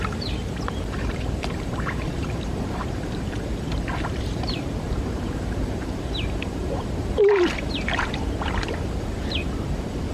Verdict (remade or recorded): remade